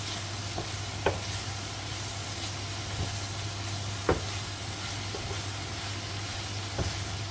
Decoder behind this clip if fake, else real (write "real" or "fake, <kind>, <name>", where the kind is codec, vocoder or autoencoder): real